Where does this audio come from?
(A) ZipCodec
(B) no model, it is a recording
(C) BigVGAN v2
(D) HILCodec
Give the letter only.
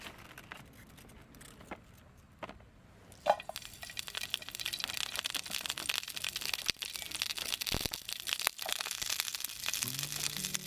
B